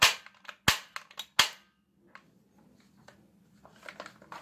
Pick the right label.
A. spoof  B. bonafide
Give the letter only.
B